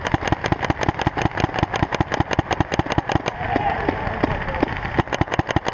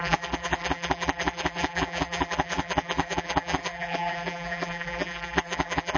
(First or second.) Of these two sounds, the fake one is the second